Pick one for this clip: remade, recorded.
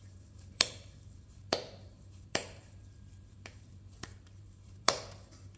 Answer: remade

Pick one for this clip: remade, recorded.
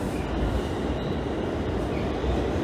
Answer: recorded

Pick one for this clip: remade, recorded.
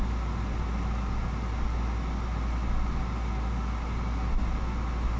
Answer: recorded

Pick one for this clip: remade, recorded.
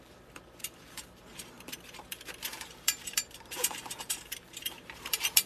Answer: remade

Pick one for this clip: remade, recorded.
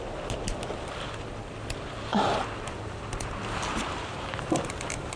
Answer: remade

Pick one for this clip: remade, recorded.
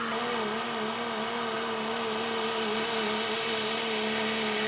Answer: recorded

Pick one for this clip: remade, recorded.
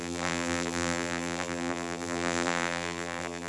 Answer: remade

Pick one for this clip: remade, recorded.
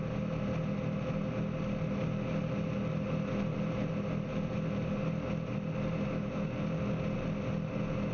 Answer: recorded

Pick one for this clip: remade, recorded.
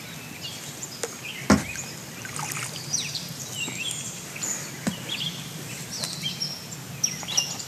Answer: recorded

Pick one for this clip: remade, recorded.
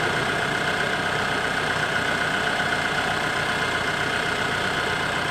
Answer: remade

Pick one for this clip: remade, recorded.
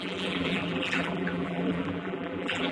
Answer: remade